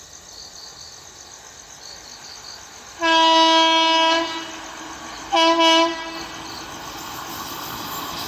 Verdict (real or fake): real